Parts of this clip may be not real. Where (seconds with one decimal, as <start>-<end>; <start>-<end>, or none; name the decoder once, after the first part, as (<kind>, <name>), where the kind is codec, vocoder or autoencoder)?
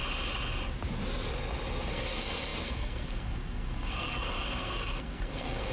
1.9-5.7 (codec, SNAC)